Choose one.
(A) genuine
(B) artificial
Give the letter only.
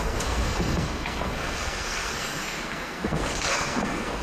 B